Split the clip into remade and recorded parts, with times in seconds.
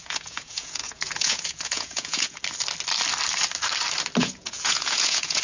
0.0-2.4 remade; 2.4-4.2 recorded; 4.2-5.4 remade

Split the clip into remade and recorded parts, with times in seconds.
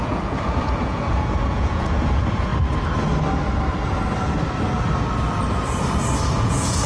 0.0-2.5 remade; 2.5-6.4 recorded; 6.4-6.9 remade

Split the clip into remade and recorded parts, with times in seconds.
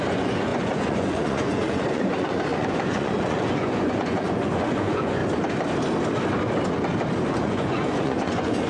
0.0-5.2 remade; 5.2-7.3 recorded; 7.3-8.7 remade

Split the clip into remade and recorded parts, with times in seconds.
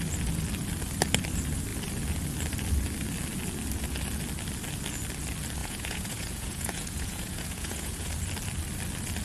0.0-5.6 recorded; 5.6-8.1 remade; 8.1-9.2 recorded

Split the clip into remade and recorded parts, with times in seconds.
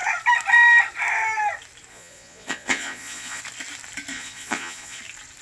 0.0-1.9 recorded; 1.9-3.4 remade; 3.4-4.1 recorded; 4.1-5.0 remade; 5.0-5.4 recorded